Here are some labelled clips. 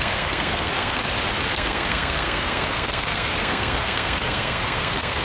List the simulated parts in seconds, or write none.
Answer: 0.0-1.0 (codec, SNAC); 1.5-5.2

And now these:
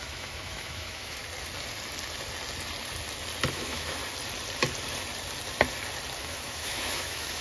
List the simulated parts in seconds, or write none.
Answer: 0.0-1.2 (autoencoder, DAC-VAE); 3.5-4.0; 6.2-7.4

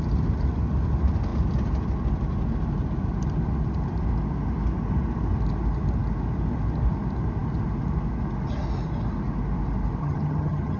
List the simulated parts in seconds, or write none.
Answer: 10.0-10.8 (vocoder, HiFi-GAN)

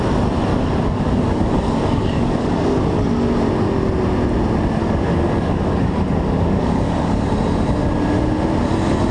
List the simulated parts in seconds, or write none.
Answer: 0.5-2.8 (codec, DAC); 4.8-7.3